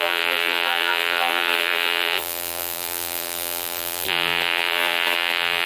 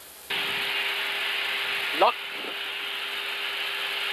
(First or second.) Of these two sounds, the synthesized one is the first